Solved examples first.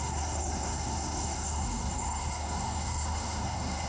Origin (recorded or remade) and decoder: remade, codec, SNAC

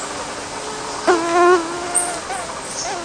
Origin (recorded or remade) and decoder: recorded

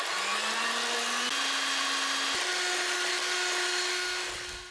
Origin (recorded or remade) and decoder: recorded